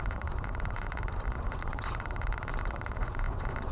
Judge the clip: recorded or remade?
remade